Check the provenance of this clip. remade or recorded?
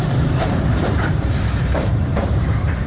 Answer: remade